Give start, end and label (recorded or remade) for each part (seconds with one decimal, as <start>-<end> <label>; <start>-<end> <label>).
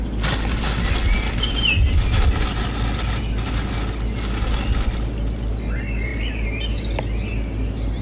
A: 0.0-8.0 recorded